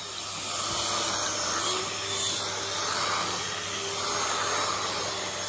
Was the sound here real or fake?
real